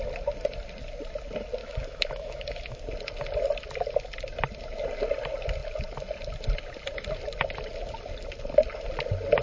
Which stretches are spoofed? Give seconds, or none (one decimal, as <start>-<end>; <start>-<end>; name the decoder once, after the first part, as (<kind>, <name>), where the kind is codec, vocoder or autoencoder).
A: 1.6-2.8 (autoencoder, DAC-VAE)